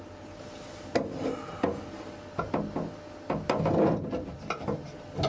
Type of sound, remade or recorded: recorded